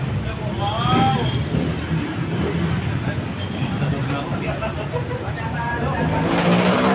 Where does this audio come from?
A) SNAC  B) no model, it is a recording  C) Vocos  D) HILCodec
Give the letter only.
B